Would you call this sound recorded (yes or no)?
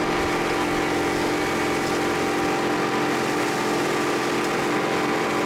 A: yes